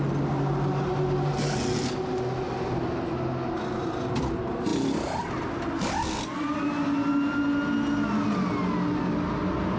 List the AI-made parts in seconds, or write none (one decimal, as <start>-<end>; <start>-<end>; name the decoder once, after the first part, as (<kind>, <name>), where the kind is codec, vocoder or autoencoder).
none